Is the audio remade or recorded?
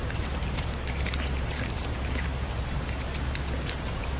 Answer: remade